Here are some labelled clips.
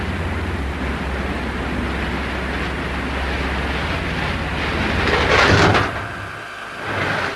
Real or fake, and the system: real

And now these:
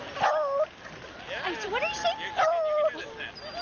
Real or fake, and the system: real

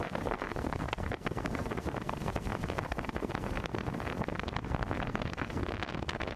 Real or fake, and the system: fake, codec, SNAC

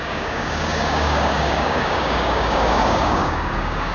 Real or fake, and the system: fake, codec, DAC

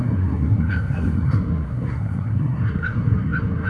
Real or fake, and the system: fake, codec, SNAC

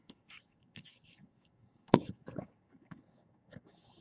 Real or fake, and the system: fake, codec, DAC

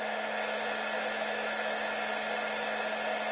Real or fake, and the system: real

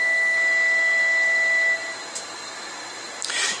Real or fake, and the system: real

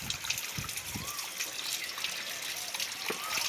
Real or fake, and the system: real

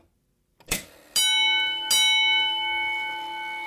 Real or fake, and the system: real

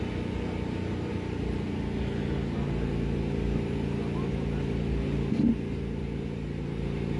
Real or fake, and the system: real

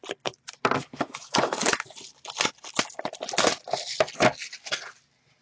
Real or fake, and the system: real